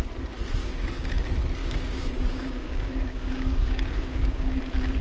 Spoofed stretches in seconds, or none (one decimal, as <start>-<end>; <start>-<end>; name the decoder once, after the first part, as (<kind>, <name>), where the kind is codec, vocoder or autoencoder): 0.6-1.1 (codec, DAC); 1.6-4.6